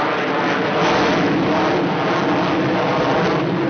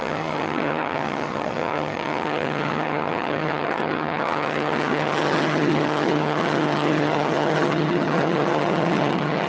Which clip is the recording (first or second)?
first